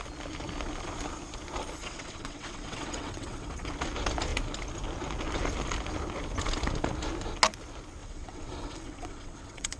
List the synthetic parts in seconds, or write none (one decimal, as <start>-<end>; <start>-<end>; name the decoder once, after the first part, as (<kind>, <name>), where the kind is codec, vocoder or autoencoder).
1.8-3.7 (vocoder, WaveNeXt); 8.0-9.8